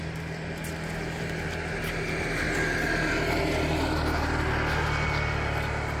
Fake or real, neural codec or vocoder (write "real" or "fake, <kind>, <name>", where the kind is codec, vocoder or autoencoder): real